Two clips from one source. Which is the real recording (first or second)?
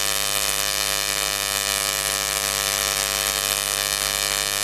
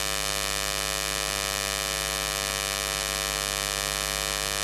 second